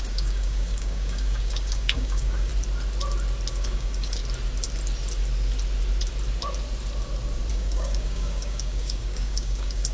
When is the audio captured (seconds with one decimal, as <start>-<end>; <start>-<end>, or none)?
2.5-3.5; 4.2-7.5